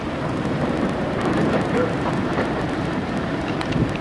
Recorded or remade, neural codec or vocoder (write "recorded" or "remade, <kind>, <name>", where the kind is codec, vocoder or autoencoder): remade, vocoder, BigVGAN v2